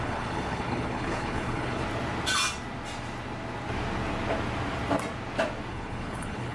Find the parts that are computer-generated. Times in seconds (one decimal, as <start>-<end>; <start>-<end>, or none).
0.0-1.8; 5.7-6.5